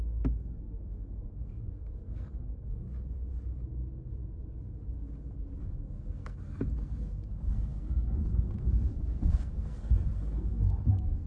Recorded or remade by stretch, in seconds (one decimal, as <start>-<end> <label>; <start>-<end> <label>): 0.0-2.8 remade; 2.8-5.6 recorded; 5.6-11.3 remade